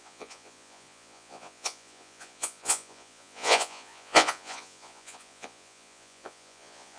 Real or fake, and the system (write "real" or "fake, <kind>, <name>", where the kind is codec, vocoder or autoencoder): fake, vocoder, Vocos